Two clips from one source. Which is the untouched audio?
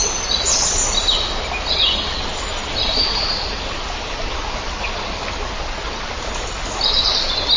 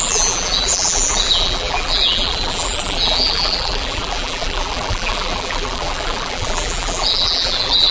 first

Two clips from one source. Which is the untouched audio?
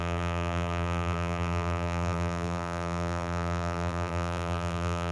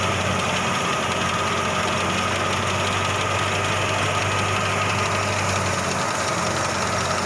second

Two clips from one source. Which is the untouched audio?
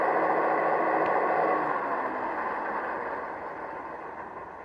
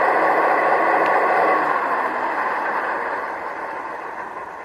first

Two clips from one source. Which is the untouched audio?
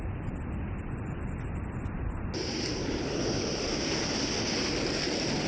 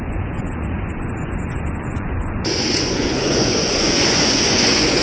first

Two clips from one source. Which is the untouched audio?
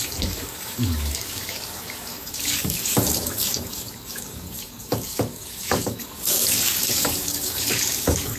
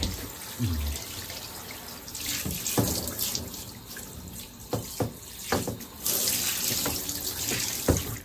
second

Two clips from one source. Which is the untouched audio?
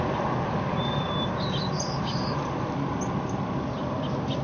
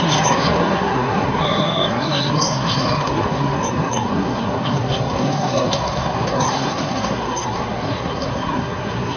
first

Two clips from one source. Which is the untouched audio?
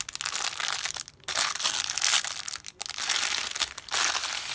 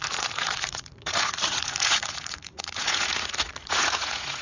first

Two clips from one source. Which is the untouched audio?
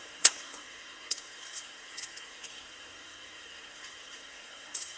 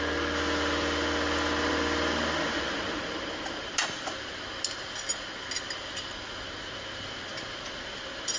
second